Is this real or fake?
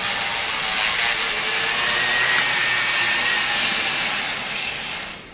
real